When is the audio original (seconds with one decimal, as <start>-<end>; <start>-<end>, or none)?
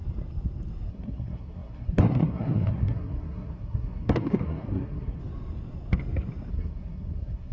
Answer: 0.0-0.9; 5.2-6.5